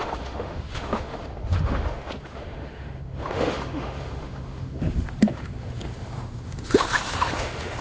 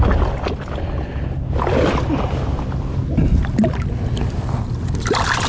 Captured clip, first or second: second